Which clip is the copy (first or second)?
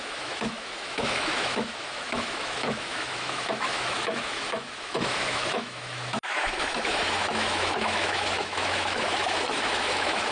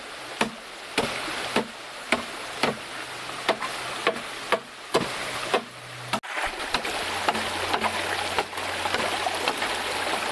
first